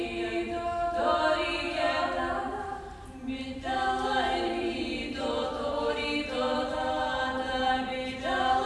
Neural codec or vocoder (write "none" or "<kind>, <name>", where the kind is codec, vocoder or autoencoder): vocoder, BigVGAN v2